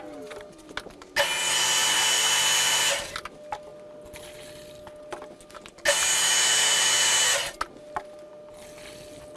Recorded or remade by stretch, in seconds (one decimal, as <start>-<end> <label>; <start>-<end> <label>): 0.0-9.4 recorded